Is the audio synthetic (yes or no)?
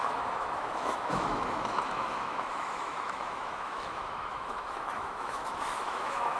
yes